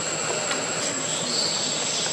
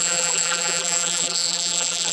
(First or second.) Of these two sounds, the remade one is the second